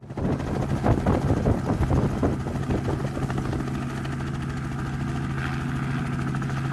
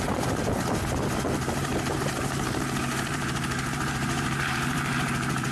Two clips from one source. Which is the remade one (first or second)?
second